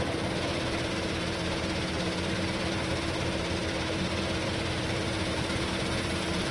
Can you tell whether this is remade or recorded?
remade